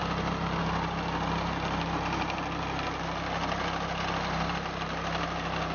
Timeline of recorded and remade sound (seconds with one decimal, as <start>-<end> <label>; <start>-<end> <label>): 0.0-5.7 recorded